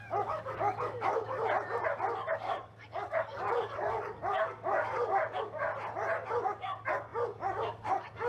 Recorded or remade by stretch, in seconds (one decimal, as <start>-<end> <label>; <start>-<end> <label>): 0.0-1.4 remade; 1.4-2.3 recorded; 2.3-5.7 remade; 5.7-6.3 recorded; 6.3-8.3 remade

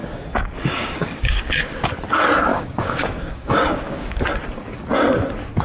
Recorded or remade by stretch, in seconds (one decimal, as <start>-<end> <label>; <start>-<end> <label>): 0.0-1.5 remade; 1.5-2.5 recorded; 2.5-4.2 remade; 4.2-5.6 recorded

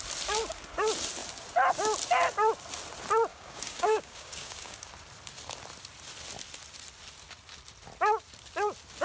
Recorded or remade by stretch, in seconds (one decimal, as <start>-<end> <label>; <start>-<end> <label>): 0.0-3.3 recorded; 3.3-4.9 remade; 4.9-9.0 recorded

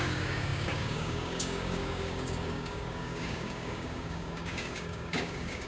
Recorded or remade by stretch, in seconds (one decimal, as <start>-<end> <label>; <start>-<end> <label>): 0.0-5.7 remade

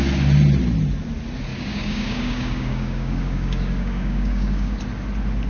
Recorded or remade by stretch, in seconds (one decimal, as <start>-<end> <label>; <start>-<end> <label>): 0.0-1.5 recorded; 1.5-4.8 remade; 4.8-5.5 recorded